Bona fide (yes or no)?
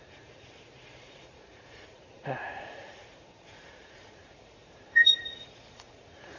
no